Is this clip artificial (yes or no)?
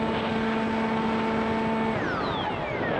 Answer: no